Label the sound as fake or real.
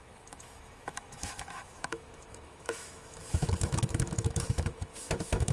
fake